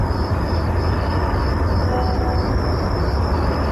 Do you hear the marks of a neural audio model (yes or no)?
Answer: no